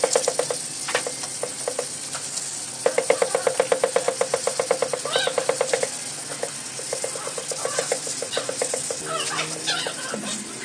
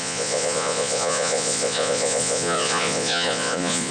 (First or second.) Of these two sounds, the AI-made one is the second